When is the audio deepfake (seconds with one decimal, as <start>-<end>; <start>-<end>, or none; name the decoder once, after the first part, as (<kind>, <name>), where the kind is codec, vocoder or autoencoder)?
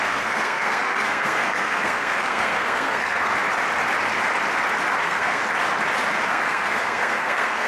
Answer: 0.0-3.3 (codec, SNAC); 5.0-5.4; 6.3-7.7